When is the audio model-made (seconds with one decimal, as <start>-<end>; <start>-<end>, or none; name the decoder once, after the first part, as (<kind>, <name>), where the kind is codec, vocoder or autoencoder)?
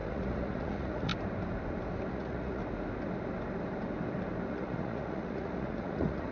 0.0-1.1 (vocoder, Vocos); 2.1-2.6; 4.5-6.3